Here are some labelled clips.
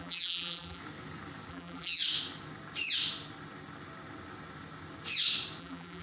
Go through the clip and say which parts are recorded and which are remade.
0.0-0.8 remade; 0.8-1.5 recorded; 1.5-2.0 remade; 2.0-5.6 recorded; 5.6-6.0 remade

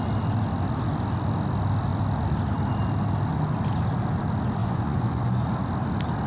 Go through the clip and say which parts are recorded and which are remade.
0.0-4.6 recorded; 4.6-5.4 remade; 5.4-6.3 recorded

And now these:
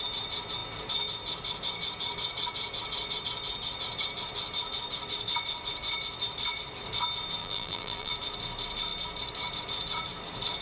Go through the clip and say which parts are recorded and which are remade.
0.0-7.4 recorded; 7.4-8.1 remade; 8.1-10.6 recorded